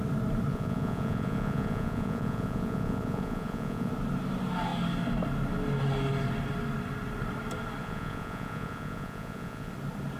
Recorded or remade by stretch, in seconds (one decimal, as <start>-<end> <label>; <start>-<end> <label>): 0.0-0.5 recorded; 0.5-3.9 remade; 3.9-7.8 recorded; 7.8-9.7 remade; 9.7-10.2 recorded